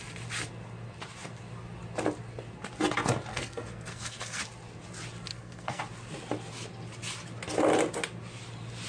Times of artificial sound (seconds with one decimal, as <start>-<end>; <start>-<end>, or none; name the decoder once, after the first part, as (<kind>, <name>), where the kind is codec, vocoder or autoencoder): 3.3-4.4 (codec, SNAC); 5.3-5.8